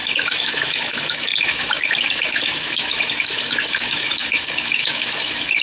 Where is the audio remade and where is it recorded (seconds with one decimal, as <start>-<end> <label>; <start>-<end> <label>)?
0.0-5.6 remade